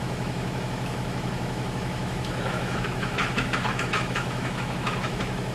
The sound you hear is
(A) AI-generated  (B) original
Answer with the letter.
A